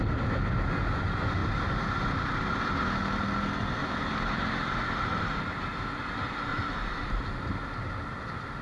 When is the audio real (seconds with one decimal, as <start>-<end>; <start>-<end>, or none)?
0.0-1.4; 2.4-3.8; 5.4-6.5; 7.2-8.6